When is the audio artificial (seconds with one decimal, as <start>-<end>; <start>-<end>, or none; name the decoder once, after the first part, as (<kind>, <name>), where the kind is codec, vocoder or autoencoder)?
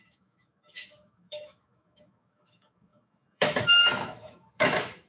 0.0-5.1 (autoencoder, DAC-VAE)